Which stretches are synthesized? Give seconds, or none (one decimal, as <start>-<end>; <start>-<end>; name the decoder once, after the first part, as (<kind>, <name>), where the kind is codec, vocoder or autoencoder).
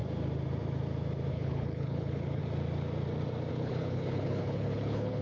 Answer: 1.3-2.4 (codec, HILCodec); 3.5-5.2